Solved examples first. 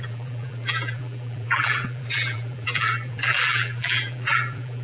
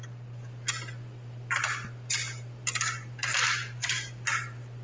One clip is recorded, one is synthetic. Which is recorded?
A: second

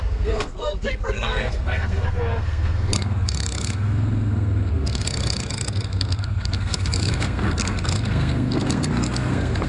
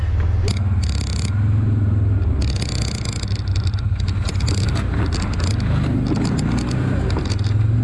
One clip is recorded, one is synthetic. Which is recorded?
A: second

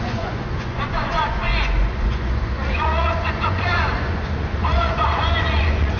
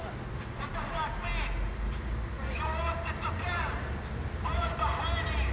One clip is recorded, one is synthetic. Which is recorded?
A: second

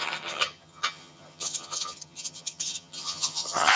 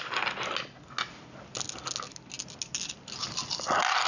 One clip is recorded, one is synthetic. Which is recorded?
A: second